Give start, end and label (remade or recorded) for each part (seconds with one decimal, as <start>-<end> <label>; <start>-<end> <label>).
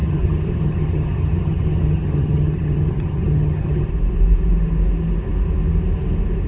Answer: 0.0-3.9 remade; 3.9-6.5 recorded